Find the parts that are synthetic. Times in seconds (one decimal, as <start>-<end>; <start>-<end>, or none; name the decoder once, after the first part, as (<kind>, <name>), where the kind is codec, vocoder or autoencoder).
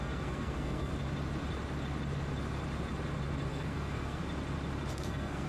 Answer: 0.0-0.9 (codec, SNAC); 3.5-4.2; 4.9-5.5